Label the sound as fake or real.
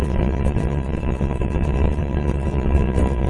fake